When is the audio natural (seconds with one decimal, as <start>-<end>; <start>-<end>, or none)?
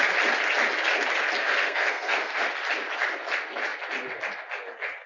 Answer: 0.0-1.4; 2.4-5.1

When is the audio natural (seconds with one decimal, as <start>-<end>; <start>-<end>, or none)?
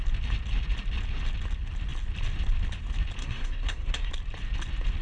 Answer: 0.0-3.2; 4.1-5.0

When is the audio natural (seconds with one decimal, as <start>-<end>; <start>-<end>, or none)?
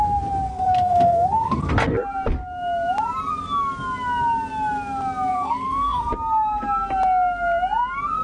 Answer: 0.0-0.5; 1.7-5.3; 6.1-8.2